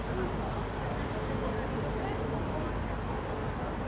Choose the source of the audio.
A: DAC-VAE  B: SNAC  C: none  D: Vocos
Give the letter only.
C